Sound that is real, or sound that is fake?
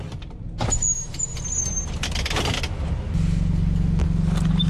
real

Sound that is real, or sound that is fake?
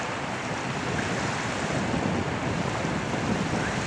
real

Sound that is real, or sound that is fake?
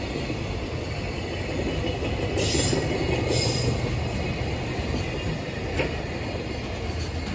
real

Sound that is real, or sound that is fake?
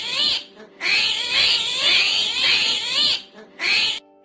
real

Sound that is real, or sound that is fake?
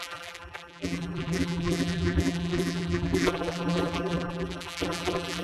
fake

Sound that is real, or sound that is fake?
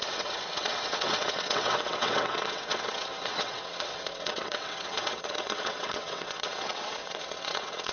fake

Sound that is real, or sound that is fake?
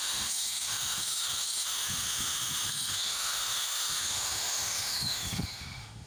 fake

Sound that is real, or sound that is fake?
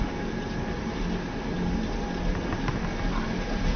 real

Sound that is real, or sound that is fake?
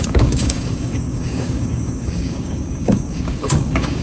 fake